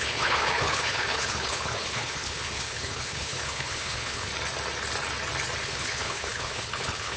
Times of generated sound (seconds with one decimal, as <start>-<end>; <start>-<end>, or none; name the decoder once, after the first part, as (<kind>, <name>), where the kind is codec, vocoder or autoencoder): 0.0-4.3 (codec, HILCodec); 5.6-7.2